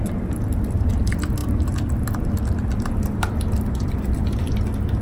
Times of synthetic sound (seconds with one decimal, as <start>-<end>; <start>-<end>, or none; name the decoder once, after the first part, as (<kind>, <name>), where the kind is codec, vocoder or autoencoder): none

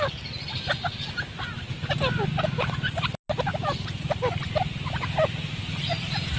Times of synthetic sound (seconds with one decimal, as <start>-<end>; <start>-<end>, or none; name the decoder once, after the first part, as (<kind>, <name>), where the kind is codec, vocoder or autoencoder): none

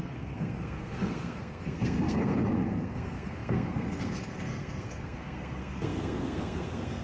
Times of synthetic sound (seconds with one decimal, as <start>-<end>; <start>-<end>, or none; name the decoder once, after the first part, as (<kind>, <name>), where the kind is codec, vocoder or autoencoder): 0.0-7.0 (codec, SNAC)

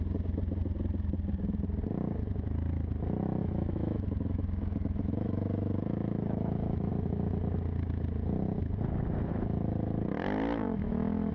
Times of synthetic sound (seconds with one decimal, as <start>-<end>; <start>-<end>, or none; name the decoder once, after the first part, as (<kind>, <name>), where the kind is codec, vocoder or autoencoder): 3.4-6.9 (autoencoder, DAC-VAE); 10.6-11.3

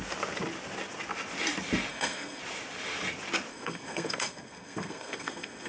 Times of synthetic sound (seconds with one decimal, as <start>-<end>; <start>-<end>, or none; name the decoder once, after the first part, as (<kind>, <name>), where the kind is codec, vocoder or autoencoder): 1.9-2.4 (codec, SNAC); 3.5-5.7

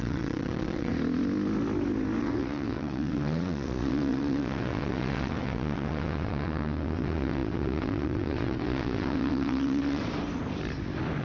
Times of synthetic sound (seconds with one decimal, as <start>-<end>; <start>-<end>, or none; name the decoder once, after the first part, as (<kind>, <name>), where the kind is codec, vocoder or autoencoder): 0.0-0.9 (vocoder, WaveNeXt); 2.2-10.0